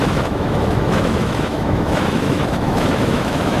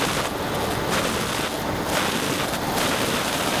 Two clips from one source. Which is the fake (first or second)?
first